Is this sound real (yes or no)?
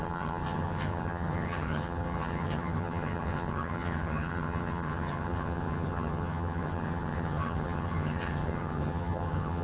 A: no